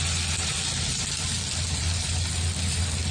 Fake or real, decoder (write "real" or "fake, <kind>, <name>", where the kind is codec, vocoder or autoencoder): real